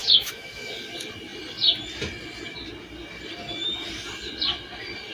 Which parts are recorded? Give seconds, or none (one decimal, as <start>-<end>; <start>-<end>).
0.7-5.1